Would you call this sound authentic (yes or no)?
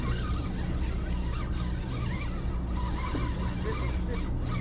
yes